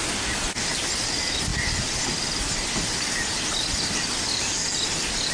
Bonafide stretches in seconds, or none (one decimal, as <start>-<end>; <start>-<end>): 0.0-5.3